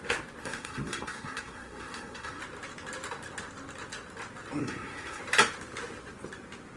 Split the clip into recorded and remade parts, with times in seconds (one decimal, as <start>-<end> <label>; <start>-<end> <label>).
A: 0.0-0.4 recorded; 0.4-2.4 remade; 2.4-4.6 recorded; 4.6-5.2 remade; 5.2-6.8 recorded